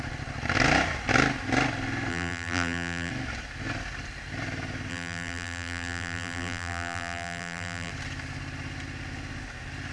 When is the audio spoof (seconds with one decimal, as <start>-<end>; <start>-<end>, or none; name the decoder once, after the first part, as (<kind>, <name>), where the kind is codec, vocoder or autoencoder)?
2.1-3.1 (vocoder, BigVGAN v2); 4.9-7.9